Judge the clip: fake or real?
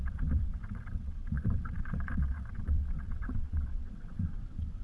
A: fake